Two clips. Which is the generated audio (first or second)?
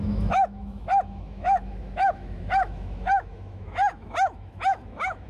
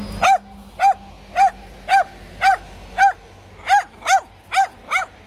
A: first